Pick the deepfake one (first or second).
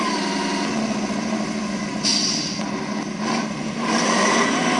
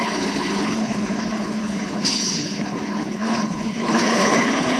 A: second